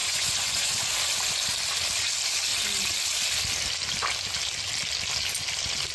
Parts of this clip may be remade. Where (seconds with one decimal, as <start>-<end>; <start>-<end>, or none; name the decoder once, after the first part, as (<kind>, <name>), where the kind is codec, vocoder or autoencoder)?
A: 0.0-0.8 (vocoder, Vocos)